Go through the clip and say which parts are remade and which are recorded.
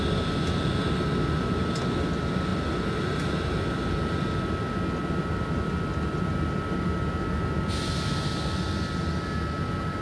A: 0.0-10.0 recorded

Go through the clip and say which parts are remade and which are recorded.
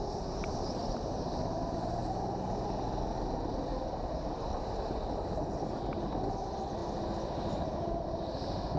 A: 0.0-8.8 recorded